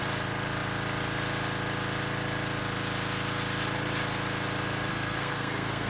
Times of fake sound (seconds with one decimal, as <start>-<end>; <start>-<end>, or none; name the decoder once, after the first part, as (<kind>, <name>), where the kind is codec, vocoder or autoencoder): 4.9-5.9 (codec, SNAC)